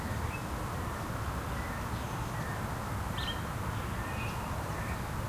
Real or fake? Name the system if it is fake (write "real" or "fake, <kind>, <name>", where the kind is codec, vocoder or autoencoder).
real